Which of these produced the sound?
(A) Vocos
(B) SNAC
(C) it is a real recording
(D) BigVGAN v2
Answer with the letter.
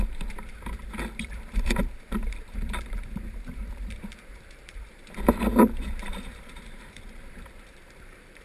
D